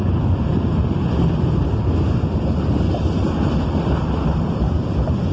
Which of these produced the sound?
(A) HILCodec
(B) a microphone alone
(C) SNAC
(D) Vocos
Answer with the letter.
B